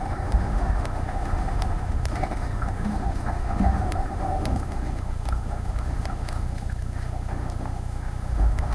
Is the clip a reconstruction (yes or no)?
yes